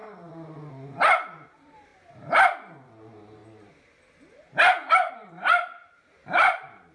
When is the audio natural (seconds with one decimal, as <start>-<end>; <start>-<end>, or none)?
1.9-2.7; 3.4-5.1